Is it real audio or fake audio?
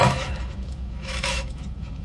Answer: fake